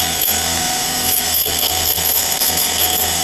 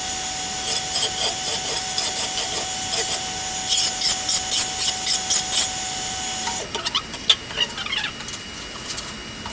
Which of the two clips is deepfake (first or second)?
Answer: first